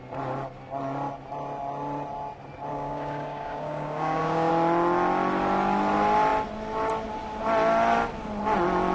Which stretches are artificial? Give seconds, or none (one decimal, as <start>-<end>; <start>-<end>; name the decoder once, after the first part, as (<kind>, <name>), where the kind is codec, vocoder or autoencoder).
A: 2.7-4.5 (codec, DAC)